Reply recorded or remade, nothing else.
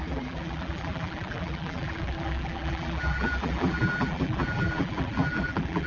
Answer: remade